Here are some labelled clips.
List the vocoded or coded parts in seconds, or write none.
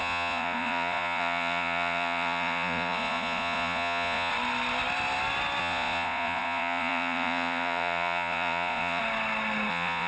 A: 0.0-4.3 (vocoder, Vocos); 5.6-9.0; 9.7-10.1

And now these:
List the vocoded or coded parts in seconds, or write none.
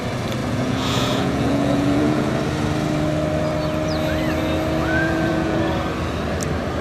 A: 0.4-2.3 (vocoder, Vocos); 4.8-5.6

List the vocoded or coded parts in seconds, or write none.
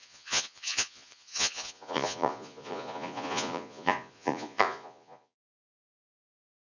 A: 0.0-6.8 (vocoder, Vocos)